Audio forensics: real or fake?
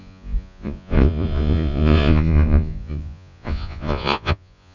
fake